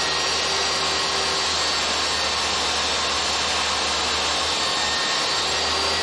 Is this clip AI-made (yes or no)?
no